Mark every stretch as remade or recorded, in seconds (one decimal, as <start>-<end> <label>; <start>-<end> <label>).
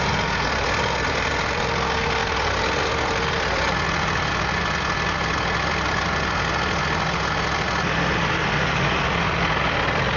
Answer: 0.0-10.2 recorded